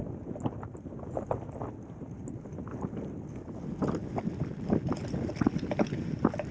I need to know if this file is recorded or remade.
recorded